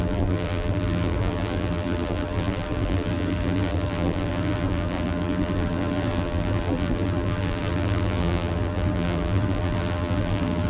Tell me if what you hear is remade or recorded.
remade